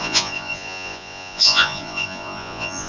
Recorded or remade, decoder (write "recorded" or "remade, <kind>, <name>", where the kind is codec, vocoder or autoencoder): remade, vocoder, Vocos